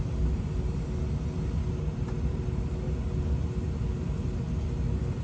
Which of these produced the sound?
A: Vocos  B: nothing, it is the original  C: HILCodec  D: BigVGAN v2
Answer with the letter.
B